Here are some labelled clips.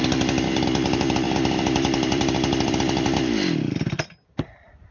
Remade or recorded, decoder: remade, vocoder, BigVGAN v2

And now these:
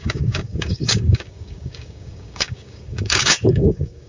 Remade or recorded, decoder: remade, codec, DAC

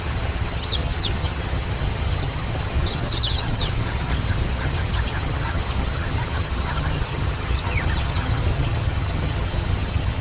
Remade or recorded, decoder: remade, vocoder, HiFi-GAN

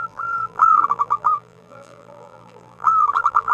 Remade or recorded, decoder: remade, vocoder, BigVGAN v2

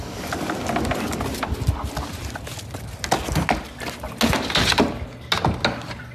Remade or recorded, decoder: recorded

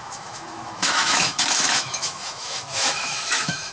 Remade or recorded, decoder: remade, autoencoder, DAC-VAE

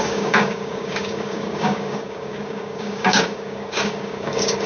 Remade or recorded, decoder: remade, codec, DAC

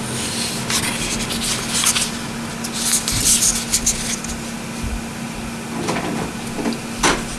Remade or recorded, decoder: recorded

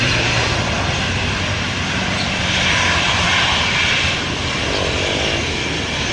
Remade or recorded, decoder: remade, vocoder, BigVGAN v2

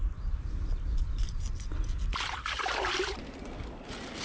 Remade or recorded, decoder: recorded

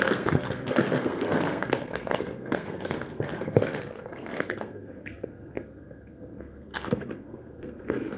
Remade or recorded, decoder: remade, codec, SNAC